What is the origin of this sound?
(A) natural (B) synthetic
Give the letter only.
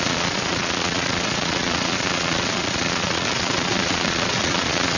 B